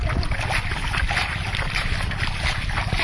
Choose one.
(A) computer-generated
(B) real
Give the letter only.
B